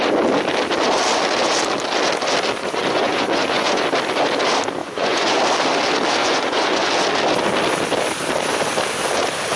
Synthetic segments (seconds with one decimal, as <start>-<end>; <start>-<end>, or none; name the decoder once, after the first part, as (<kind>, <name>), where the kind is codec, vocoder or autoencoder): 2.6-3.8 (vocoder, Vocos); 4.8-5.4; 6.2-6.9